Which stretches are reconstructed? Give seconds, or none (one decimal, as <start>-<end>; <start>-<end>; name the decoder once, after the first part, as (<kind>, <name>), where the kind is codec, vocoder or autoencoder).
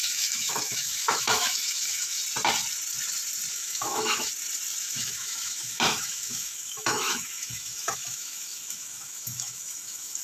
0.0-2.2 (autoencoder, DAC-VAE); 3.5-4.3; 4.8-10.2